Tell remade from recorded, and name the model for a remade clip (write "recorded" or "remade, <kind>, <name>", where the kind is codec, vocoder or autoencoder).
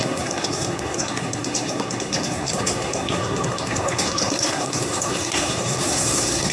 remade, codec, SNAC